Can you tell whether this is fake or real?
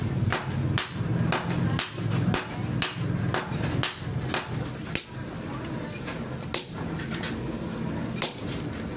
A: real